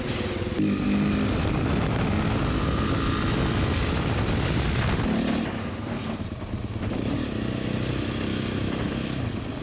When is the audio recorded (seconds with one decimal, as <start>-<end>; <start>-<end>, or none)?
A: 0.0-5.6; 6.2-9.6